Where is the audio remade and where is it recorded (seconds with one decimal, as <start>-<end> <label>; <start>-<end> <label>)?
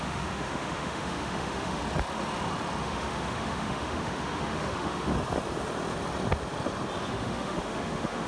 0.0-1.8 remade; 1.8-2.8 recorded; 2.8-5.1 remade; 5.1-7.1 recorded; 7.1-8.3 remade